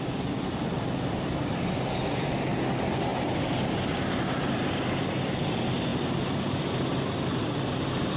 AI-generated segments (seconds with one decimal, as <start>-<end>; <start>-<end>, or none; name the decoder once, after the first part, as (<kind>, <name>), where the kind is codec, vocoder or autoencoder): 0.0-3.1 (vocoder, BigVGAN v2); 3.9-8.2